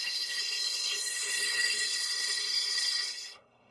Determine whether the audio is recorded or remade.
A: remade